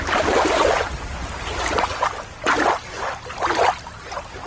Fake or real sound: real